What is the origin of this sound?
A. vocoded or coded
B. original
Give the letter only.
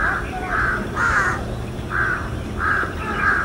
A